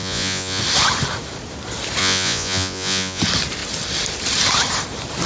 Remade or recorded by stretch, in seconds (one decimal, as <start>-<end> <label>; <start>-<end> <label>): 0.0-0.6 remade; 0.6-2.0 recorded; 2.0-3.2 remade; 3.2-5.3 recorded

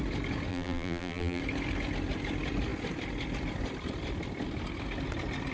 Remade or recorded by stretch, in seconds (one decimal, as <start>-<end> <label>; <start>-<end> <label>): 0.0-0.5 recorded; 0.5-1.4 remade; 1.4-5.5 recorded

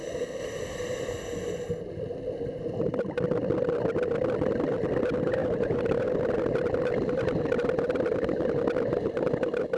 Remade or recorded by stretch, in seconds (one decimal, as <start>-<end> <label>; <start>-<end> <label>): 0.0-5.4 recorded; 5.4-6.0 remade; 6.0-9.8 recorded